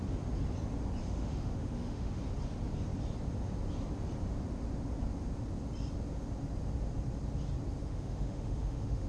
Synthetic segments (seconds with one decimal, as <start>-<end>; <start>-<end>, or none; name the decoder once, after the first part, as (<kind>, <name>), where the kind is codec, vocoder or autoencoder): 1.0-2.2 (autoencoder, DAC-VAE); 7.8-9.1